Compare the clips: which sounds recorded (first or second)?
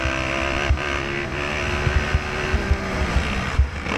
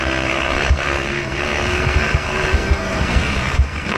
first